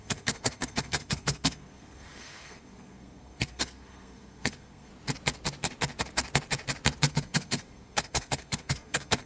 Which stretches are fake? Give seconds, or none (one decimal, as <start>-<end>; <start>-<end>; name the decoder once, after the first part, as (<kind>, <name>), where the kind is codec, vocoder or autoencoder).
0.0-4.9 (codec, SNAC); 7.1-9.3

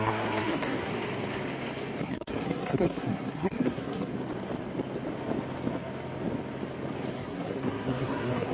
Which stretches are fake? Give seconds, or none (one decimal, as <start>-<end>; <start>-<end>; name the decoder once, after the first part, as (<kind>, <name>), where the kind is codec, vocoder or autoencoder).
0.0-0.9 (codec, SNAC); 2.0-4.1; 7.1-8.5

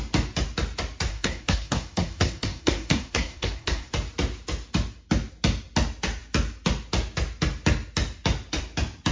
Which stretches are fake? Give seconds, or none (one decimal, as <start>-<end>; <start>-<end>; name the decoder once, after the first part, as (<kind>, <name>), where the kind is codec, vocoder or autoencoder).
1.1-3.9 (codec, SNAC)

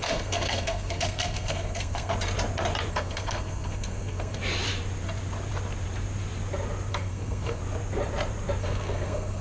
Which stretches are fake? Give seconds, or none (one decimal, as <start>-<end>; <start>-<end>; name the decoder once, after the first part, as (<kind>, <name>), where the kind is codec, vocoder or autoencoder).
0.0-2.1 (codec, SNAC); 2.9-4.4; 6.9-7.6; 8.6-9.4